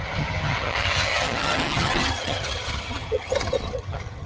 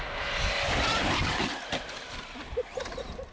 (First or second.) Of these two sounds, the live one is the second